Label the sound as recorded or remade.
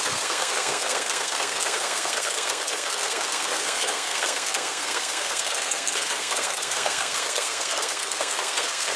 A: remade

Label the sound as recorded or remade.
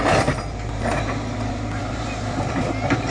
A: recorded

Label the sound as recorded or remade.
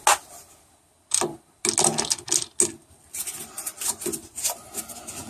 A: recorded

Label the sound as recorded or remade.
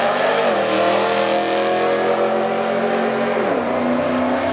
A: recorded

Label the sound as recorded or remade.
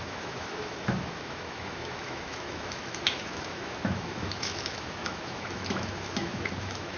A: remade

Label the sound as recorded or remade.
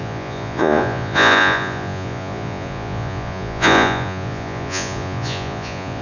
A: remade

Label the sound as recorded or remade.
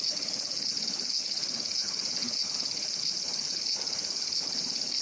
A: remade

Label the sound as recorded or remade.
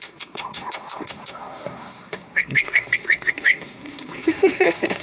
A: remade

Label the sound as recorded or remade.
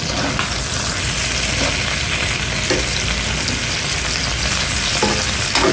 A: recorded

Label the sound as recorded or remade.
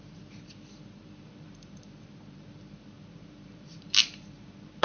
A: remade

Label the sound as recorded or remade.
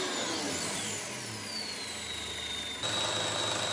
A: recorded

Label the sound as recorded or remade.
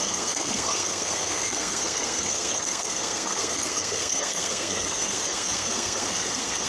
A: remade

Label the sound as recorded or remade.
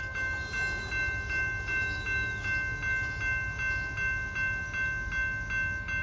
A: recorded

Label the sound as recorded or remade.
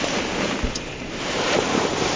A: recorded